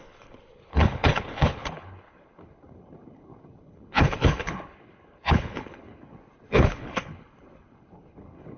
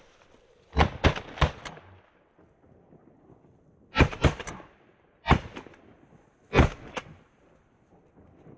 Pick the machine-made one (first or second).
first